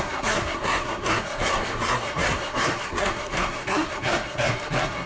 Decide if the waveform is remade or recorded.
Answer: remade